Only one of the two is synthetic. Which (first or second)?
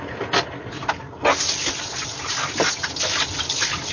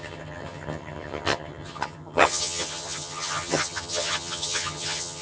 second